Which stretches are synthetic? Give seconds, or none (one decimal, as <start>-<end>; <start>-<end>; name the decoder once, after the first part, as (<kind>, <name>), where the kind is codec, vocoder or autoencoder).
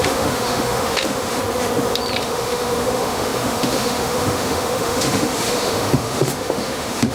0.0-1.4 (autoencoder, DAC-VAE); 2.2-7.1